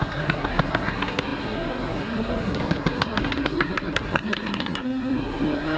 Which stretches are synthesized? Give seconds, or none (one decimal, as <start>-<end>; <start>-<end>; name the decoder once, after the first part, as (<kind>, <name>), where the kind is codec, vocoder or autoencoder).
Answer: 0.0-5.8 (codec, SNAC)